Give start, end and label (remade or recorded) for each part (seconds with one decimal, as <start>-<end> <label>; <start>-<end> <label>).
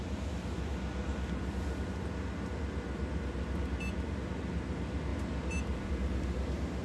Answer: 0.0-5.1 recorded; 5.1-5.9 remade; 5.9-6.8 recorded